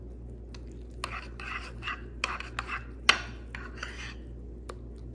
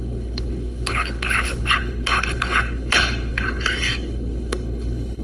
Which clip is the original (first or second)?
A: first